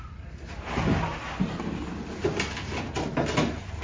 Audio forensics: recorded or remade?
recorded